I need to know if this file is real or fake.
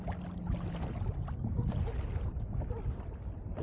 real